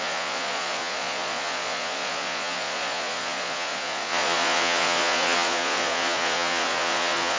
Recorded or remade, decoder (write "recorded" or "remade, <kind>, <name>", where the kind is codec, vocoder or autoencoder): remade, vocoder, Vocos